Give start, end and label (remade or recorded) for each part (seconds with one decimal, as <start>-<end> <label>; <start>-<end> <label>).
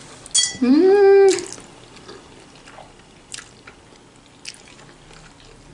0.0-5.7 recorded